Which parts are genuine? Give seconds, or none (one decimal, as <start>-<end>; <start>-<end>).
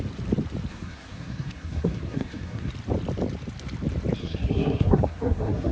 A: 0.0-0.7; 2.7-4.2